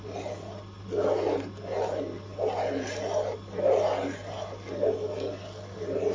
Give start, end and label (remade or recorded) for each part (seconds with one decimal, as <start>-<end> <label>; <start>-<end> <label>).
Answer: 0.0-6.1 recorded